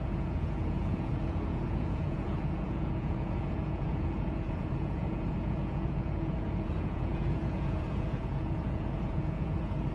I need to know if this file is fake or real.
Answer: fake